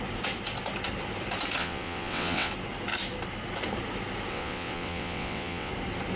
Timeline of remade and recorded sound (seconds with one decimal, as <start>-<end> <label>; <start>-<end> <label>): 0.0-1.6 recorded; 1.6-2.5 remade; 2.5-4.3 recorded; 4.3-5.7 remade; 5.7-6.2 recorded